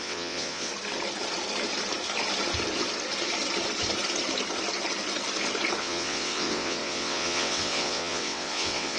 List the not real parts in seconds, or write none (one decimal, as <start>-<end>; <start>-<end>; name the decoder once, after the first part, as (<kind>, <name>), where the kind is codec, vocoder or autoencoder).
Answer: 0.0-0.7 (vocoder, WaveNeXt); 5.8-9.0